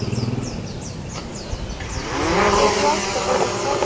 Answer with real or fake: real